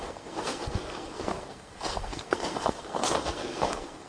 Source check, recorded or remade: remade